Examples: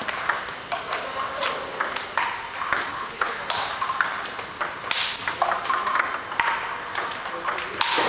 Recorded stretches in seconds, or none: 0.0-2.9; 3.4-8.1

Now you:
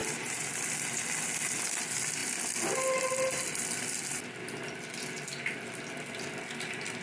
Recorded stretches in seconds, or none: 0.0-7.0